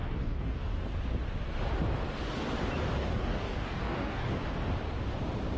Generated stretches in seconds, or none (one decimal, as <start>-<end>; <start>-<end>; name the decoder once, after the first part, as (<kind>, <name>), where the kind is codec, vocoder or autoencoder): 0.0-0.9 (codec, DAC); 3.0-4.3